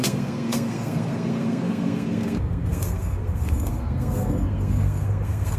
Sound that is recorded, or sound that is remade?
remade